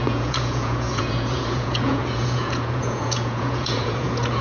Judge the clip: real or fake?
fake